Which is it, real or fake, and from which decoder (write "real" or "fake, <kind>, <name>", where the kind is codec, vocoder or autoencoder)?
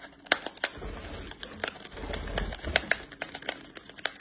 real